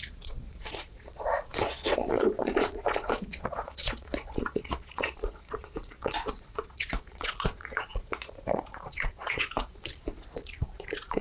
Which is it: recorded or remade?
remade